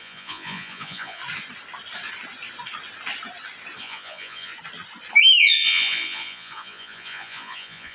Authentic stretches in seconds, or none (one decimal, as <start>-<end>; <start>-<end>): 1.2-3.8; 4.5-5.4